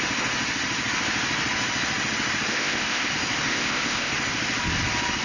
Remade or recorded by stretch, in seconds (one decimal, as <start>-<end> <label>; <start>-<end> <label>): 0.0-2.5 recorded; 2.5-3.1 remade; 3.1-3.5 recorded; 3.5-4.1 remade; 4.1-5.2 recorded